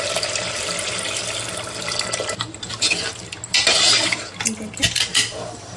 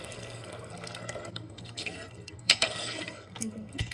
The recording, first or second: first